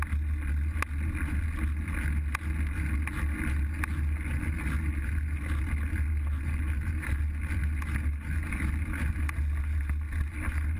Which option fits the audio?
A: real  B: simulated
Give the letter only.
A